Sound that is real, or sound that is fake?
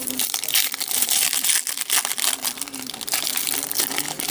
real